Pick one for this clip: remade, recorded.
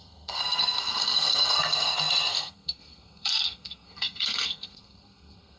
remade